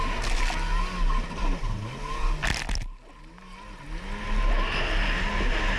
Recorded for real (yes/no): yes